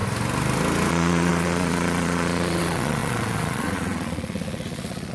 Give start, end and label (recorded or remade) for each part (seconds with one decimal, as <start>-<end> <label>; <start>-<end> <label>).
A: 0.0-0.9 recorded; 0.9-5.1 remade